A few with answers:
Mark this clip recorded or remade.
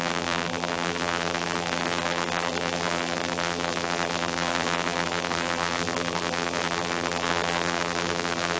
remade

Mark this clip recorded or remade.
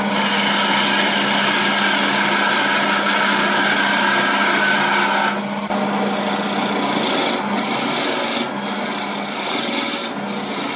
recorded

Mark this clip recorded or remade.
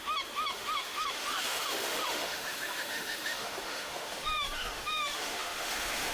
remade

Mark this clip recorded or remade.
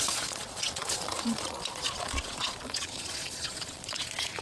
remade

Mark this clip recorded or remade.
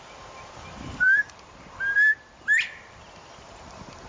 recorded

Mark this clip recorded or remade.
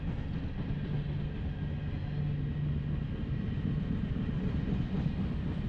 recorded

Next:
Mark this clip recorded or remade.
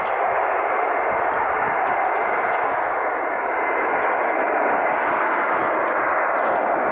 recorded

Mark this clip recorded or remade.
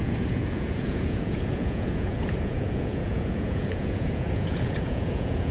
remade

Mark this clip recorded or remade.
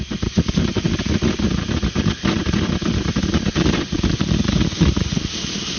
remade